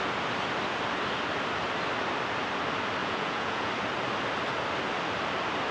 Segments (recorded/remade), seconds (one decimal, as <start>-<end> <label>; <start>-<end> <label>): 0.0-3.0 recorded; 3.0-3.7 remade; 3.7-5.7 recorded